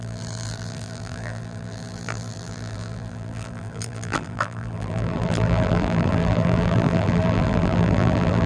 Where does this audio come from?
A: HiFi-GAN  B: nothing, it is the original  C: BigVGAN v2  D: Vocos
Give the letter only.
C